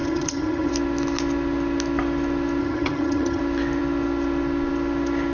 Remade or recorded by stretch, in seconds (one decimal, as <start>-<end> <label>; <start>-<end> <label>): 0.0-0.7 remade; 0.7-2.6 recorded; 2.6-3.4 remade; 3.4-5.3 recorded